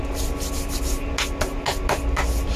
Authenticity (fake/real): real